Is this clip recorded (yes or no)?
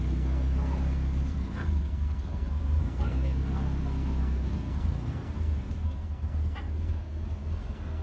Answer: no